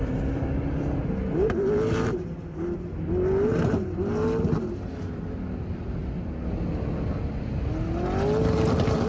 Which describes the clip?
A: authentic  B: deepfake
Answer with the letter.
A